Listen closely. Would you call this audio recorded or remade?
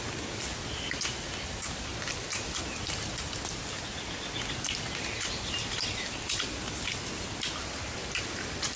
recorded